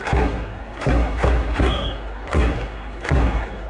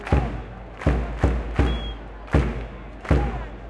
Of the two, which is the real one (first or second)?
second